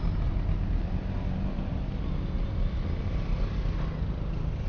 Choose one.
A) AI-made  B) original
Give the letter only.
B